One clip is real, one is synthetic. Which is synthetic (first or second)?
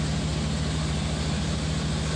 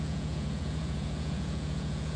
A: second